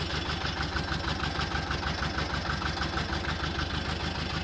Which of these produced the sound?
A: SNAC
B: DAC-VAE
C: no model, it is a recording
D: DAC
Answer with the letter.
C